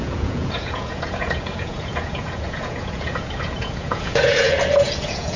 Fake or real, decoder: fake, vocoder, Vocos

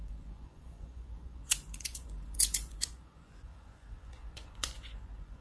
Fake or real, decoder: fake, vocoder, Vocos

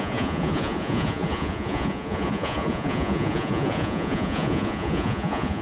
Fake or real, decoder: fake, vocoder, Vocos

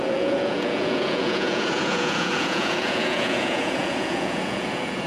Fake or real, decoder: fake, vocoder, Vocos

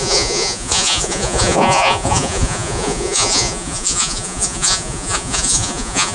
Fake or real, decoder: fake, vocoder, Vocos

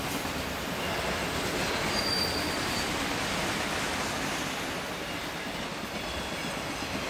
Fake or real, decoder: real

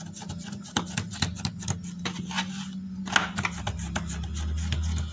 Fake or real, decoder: real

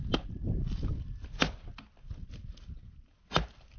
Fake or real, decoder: real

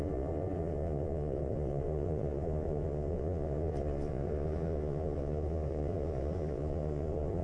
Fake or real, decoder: fake, vocoder, Vocos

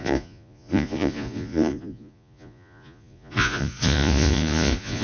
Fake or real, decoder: fake, vocoder, Vocos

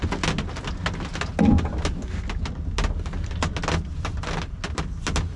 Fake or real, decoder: real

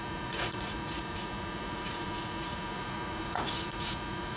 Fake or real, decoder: fake, vocoder, Vocos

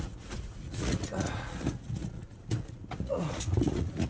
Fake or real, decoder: fake, vocoder, Vocos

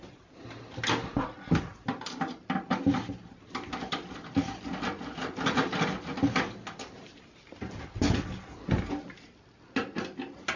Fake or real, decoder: real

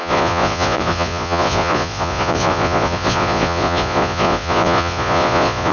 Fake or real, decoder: fake, vocoder, Vocos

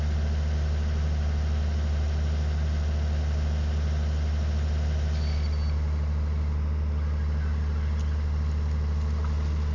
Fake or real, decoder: real